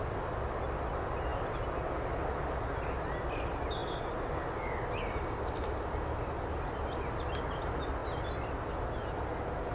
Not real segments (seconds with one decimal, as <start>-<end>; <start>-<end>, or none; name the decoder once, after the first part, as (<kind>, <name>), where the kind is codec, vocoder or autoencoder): none